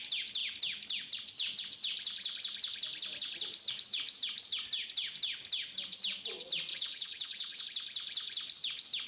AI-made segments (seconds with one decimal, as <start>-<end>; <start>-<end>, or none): 6.7-7.6